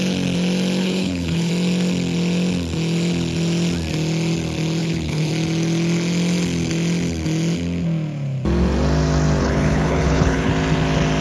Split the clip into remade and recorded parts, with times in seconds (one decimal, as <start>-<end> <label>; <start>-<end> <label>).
0.0-0.8 recorded; 0.8-1.5 remade; 1.5-4.8 recorded; 4.8-5.3 remade; 5.3-9.4 recorded; 9.4-10.5 remade; 10.5-11.2 recorded